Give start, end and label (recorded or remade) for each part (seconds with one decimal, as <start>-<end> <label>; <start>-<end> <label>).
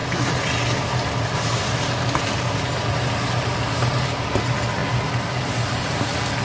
0.0-6.4 recorded